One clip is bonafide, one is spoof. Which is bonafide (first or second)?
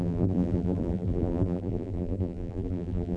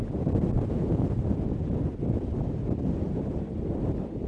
second